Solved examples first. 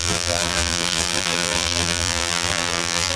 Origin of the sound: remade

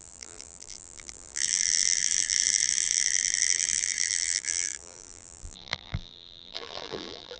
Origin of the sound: remade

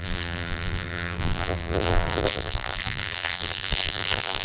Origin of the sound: remade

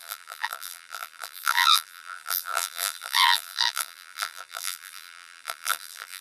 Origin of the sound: remade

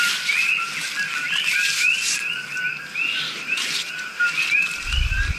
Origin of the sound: recorded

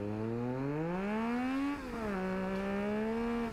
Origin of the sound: recorded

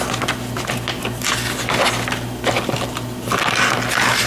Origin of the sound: recorded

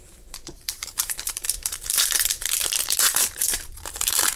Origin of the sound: remade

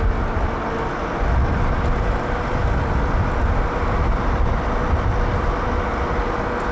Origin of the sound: recorded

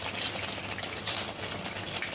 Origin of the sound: recorded